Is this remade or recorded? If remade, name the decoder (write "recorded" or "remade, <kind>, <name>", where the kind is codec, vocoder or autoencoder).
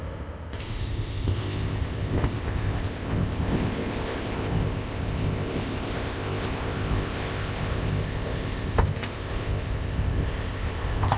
remade, codec, ZipCodec